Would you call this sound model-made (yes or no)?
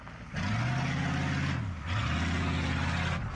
no